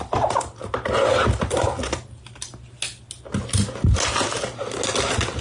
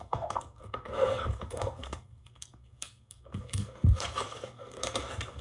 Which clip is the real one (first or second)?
first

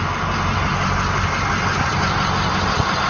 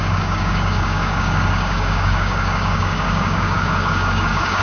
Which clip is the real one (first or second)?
first